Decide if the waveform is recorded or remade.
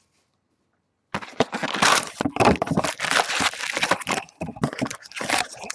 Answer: remade